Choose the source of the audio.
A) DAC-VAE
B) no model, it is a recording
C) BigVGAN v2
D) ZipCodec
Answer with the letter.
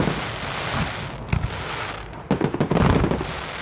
B